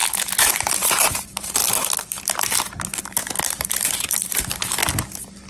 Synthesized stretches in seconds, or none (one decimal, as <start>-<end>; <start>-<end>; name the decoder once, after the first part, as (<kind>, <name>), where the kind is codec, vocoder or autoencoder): 0.0-1.6 (vocoder, BigVGAN v2); 3.3-4.8